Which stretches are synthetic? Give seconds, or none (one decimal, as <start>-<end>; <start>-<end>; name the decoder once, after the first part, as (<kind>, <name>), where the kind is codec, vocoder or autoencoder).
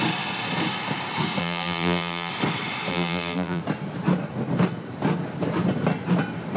1.4-2.3 (vocoder, BigVGAN v2); 2.9-3.6